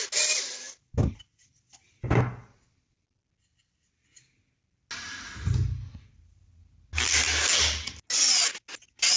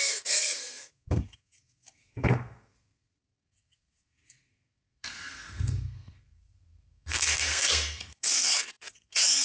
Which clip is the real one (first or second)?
first